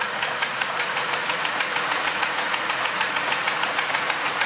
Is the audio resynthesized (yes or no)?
yes